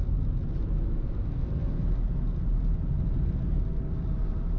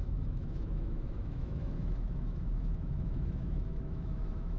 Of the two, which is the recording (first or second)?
first